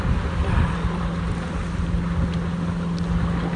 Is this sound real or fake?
real